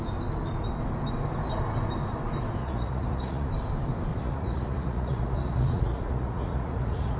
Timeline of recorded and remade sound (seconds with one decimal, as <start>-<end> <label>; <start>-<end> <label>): 0.0-2.6 recorded; 2.6-3.5 remade; 3.5-4.1 recorded; 4.1-7.2 remade